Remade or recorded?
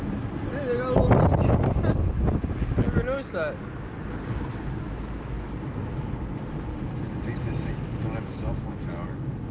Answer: recorded